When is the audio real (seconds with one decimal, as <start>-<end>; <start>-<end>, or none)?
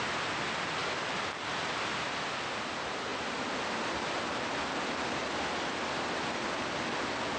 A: 0.0-7.4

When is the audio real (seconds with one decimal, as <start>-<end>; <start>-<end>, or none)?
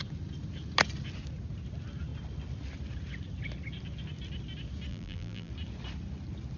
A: 0.0-4.9; 5.5-6.6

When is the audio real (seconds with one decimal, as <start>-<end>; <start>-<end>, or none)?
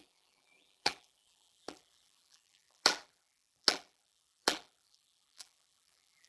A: none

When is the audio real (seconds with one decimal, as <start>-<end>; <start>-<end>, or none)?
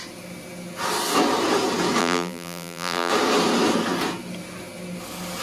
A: 0.0-2.0; 3.1-5.4